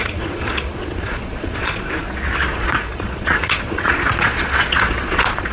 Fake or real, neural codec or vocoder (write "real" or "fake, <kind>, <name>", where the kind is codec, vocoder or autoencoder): fake, vocoder, Vocos